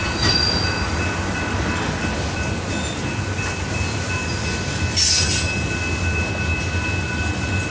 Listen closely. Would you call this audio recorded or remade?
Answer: recorded